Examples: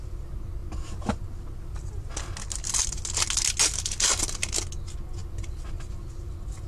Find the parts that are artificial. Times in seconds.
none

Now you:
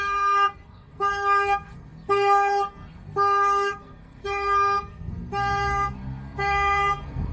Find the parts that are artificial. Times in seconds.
0.0-7.3

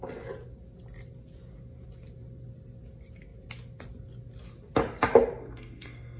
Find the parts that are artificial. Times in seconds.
5.4-6.2